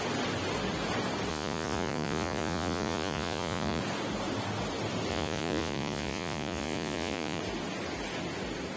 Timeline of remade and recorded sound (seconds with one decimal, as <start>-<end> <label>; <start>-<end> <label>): 0.0-1.3 recorded; 1.3-3.8 remade; 3.8-5.1 recorded; 5.1-7.4 remade; 7.4-8.8 recorded